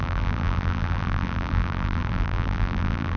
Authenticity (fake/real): fake